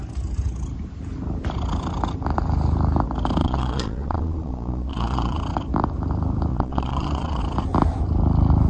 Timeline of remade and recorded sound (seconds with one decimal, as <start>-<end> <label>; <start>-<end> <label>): 0.0-3.4 recorded; 3.4-5.4 remade; 5.4-6.5 recorded; 6.5-7.4 remade; 7.4-8.7 recorded